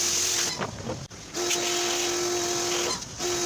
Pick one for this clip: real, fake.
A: real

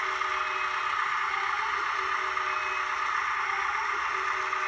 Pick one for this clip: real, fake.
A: real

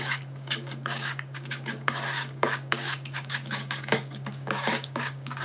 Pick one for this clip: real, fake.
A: fake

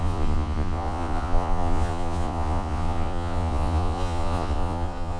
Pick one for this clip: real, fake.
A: fake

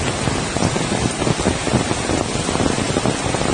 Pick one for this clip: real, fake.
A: real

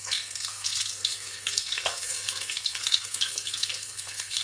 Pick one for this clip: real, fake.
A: fake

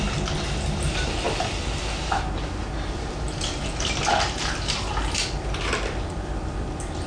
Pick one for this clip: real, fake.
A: real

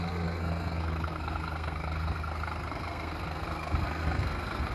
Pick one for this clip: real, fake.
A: fake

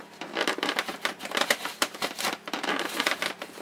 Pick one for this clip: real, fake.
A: fake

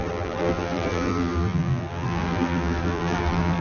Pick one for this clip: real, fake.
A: fake